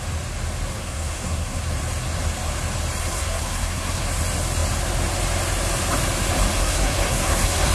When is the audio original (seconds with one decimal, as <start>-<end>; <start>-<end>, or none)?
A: 0.0-0.7; 1.6-3.0; 4.1-6.6